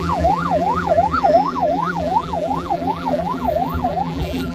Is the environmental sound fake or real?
fake